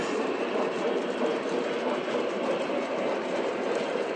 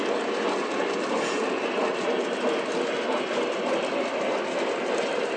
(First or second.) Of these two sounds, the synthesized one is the first